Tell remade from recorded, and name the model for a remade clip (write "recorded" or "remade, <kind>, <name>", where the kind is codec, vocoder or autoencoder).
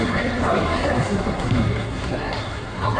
remade, codec, SNAC